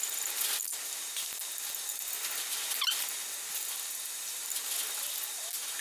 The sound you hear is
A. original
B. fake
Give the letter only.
A